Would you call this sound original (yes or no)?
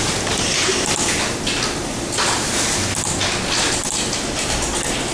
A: yes